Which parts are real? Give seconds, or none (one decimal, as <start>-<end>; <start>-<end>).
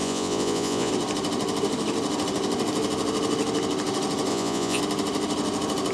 0.9-4.3; 4.8-5.9